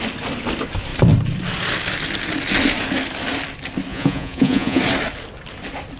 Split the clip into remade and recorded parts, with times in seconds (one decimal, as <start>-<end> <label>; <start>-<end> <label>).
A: 0.0-3.9 recorded; 3.9-4.8 remade; 4.8-6.0 recorded